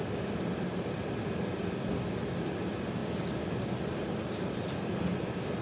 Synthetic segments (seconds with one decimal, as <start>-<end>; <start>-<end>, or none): none